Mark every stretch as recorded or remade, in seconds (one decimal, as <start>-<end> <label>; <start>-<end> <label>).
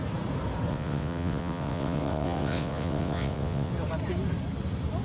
0.0-0.7 recorded; 0.7-3.7 remade; 3.7-5.0 recorded